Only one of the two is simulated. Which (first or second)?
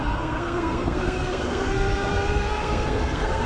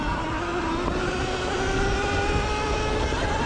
first